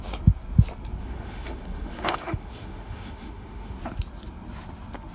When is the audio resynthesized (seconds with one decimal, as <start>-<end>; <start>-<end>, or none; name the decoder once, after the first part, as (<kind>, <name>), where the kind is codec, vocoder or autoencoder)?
1.0-3.8 (autoencoder, DAC-VAE)